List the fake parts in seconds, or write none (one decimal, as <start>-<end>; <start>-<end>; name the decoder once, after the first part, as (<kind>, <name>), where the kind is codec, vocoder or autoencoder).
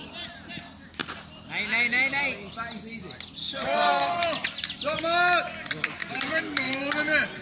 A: 3.4-4.2 (codec, DAC); 6.0-6.8